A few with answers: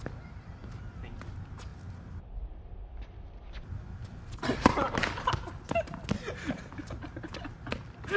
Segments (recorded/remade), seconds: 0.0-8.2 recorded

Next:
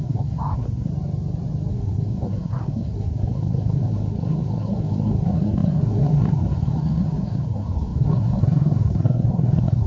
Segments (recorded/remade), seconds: 0.0-0.9 remade; 0.9-1.7 recorded; 1.7-9.9 remade

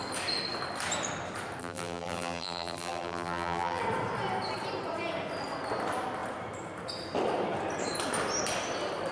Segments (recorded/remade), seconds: 0.0-1.6 recorded; 1.6-3.8 remade; 3.8-9.1 recorded

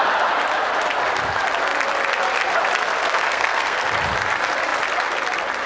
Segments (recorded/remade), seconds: 0.0-3.0 recorded; 3.0-3.8 remade; 3.8-5.7 recorded

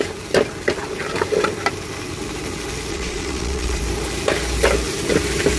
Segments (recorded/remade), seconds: 0.0-2.9 recorded; 2.9-3.8 remade; 3.8-5.6 recorded